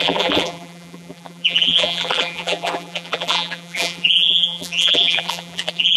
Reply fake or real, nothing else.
fake